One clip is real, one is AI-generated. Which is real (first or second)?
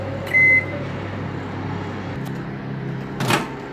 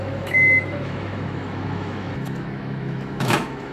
first